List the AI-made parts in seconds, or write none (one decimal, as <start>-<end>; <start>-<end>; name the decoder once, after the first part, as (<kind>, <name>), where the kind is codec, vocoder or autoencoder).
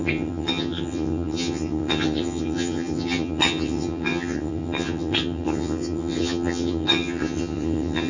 0.0-8.1 (vocoder, HiFi-GAN)